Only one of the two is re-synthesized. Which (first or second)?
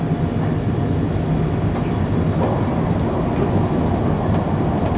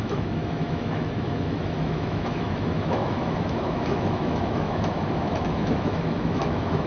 second